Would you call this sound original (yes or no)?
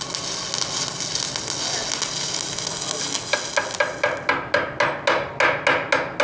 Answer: yes